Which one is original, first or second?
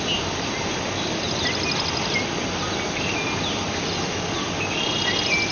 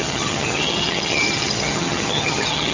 first